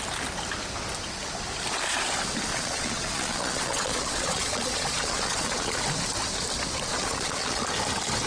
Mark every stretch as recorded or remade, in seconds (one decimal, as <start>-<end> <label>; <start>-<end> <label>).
0.0-2.5 recorded; 2.5-5.8 remade; 5.8-6.9 recorded; 6.9-7.7 remade; 7.7-8.3 recorded